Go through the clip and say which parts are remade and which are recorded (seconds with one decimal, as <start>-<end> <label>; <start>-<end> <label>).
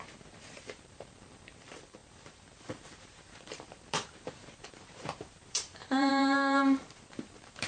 0.0-7.7 remade